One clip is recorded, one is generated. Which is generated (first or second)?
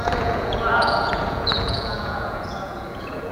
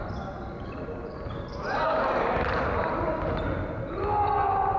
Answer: first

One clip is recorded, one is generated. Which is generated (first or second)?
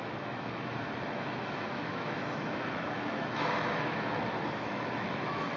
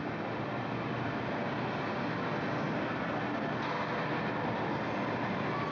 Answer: first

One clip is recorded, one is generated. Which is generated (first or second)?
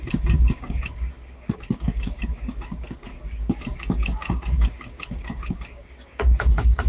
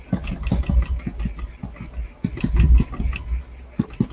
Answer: first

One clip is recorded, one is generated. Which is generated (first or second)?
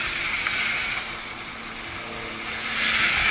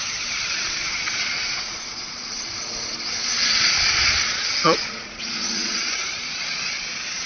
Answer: second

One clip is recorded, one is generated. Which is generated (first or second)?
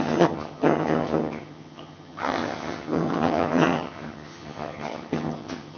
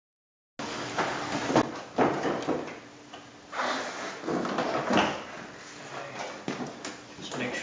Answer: first